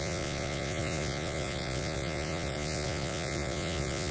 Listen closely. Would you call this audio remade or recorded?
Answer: remade